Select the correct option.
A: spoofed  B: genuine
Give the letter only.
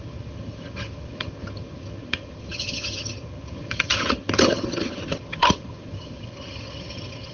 A